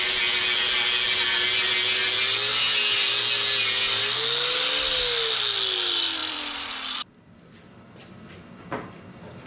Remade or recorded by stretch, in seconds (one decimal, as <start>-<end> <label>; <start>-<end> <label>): 0.0-6.2 recorded; 6.2-7.5 remade; 7.5-9.5 recorded